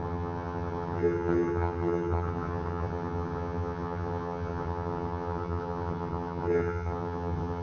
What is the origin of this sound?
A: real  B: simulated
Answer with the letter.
B